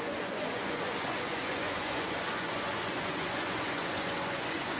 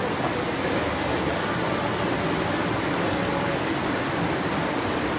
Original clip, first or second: second